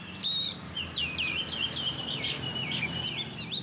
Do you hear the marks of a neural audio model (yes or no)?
yes